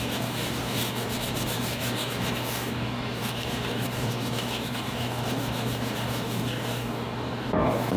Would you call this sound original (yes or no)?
no